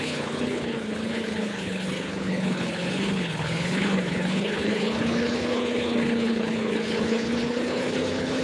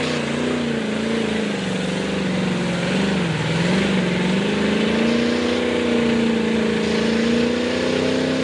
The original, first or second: second